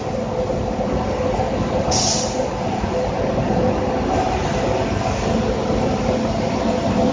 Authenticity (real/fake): real